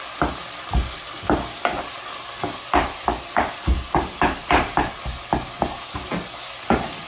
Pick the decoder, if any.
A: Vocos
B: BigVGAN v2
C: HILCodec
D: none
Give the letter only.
D